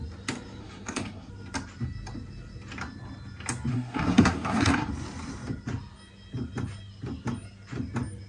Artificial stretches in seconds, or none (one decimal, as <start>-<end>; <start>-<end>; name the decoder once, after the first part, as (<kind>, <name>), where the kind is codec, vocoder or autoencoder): 0.6-1.3 (codec, SNAC); 3.7-4.9